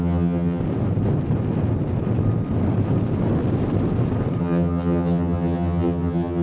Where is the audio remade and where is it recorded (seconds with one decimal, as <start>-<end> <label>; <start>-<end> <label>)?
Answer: 0.0-0.6 remade; 0.6-4.4 recorded; 4.4-6.4 remade